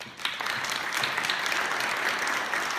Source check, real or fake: real